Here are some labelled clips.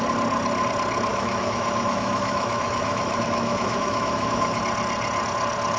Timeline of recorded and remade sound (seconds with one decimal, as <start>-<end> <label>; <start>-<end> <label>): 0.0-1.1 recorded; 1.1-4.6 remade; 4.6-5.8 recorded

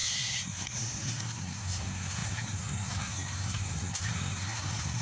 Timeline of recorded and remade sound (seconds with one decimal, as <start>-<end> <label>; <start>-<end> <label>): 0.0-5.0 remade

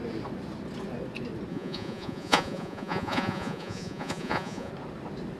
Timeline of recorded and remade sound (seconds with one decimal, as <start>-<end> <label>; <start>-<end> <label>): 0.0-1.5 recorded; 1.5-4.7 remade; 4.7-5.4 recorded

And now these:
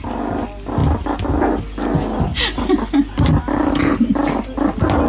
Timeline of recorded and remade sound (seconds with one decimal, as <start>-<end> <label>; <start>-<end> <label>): 0.0-5.1 recorded